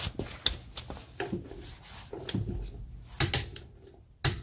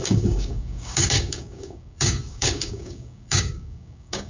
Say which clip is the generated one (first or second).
second